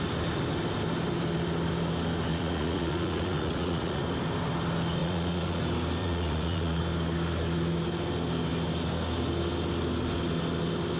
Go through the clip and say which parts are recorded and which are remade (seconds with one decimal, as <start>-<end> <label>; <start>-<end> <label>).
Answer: 0.0-2.3 recorded; 2.3-4.0 remade; 4.0-5.0 recorded; 5.0-5.6 remade; 5.6-6.0 recorded; 6.0-6.8 remade; 6.8-11.0 recorded